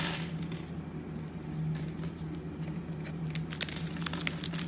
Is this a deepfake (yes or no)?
no